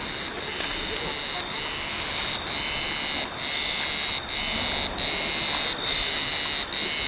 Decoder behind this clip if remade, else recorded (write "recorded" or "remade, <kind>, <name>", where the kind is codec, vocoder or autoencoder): recorded